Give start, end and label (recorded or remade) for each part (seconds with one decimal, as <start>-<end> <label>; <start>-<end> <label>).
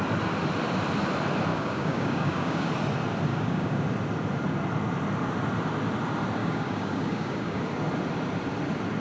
0.0-1.5 recorded; 1.5-2.7 remade; 2.7-3.3 recorded; 3.3-3.8 remade; 3.8-6.4 recorded; 6.4-7.6 remade; 7.6-9.0 recorded